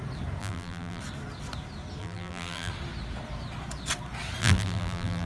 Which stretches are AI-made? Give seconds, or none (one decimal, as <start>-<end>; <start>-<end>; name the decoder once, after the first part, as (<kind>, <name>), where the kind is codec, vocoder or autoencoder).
0.4-1.0 (vocoder, BigVGAN v2); 2.0-2.7; 4.4-5.3